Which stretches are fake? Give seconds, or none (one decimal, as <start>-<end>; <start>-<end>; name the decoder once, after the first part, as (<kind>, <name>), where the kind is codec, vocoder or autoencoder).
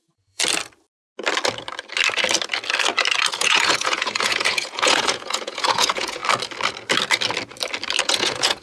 0.0-0.4 (vocoder, Vocos); 3.3-6.2; 8.0-8.6